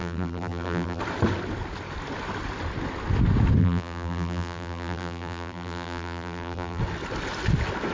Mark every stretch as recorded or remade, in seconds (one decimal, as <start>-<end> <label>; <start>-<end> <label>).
0.0-1.0 remade; 1.0-3.6 recorded; 3.6-6.8 remade; 6.8-7.9 recorded